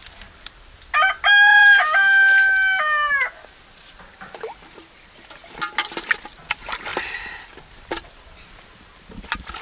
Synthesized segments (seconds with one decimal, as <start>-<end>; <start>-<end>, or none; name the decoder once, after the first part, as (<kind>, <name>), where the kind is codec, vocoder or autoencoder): none